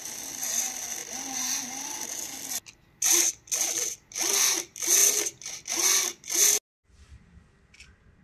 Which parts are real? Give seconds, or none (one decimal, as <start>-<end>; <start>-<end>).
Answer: 0.0-8.2